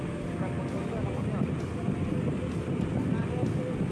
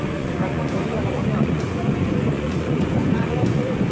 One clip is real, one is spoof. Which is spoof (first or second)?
second